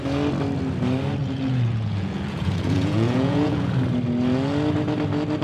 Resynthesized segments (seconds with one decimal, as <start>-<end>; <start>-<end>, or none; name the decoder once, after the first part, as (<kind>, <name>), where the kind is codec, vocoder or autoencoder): 1.2-3.7 (vocoder, Vocos)